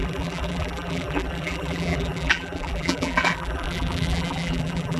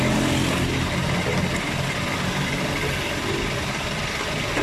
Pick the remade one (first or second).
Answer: first